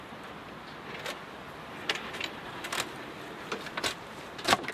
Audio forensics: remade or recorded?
recorded